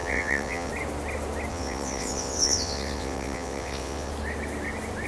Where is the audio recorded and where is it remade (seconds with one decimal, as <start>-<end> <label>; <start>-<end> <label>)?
0.0-0.7 remade; 0.7-1.5 recorded; 1.5-4.1 remade; 4.1-5.1 recorded